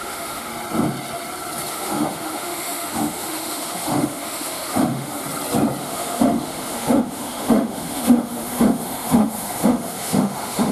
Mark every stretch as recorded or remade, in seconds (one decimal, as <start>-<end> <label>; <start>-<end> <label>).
0.0-0.5 remade; 0.5-1.7 recorded; 1.7-5.2 remade; 5.2-5.8 recorded; 5.8-10.7 remade